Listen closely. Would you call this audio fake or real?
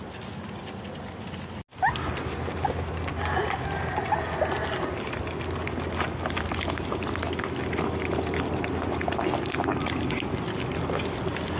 real